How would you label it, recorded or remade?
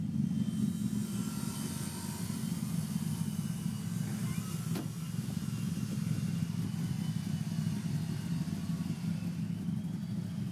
recorded